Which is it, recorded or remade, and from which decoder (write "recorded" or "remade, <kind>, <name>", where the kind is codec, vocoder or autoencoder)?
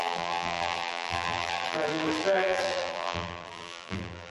remade, vocoder, BigVGAN v2